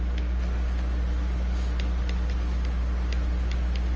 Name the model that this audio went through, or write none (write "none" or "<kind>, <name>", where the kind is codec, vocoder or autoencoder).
none